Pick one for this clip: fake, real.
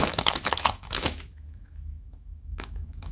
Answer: fake